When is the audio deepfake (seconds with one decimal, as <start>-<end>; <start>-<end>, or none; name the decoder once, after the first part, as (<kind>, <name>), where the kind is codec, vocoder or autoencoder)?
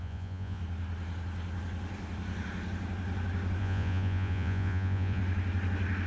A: 0.0-0.6 (vocoder, Vocos); 3.6-5.2